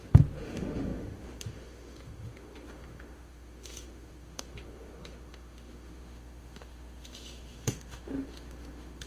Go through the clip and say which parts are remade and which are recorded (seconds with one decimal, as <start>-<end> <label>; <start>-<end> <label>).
0.0-9.1 remade